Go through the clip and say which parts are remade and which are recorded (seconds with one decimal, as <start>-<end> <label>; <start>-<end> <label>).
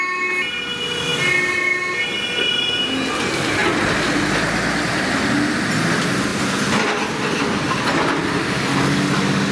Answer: 0.0-8.7 recorded; 8.7-9.5 remade